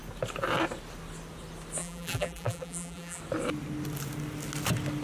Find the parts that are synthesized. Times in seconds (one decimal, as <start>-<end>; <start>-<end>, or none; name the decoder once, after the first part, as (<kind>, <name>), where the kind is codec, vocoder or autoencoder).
1.8-3.2 (vocoder, BigVGAN v2)